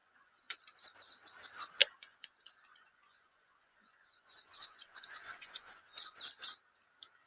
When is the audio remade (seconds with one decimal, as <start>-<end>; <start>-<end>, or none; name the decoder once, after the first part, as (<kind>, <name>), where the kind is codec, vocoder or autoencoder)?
0.0-0.6 (vocoder, Vocos); 1.8-6.2